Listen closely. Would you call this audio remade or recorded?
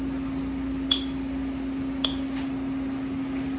recorded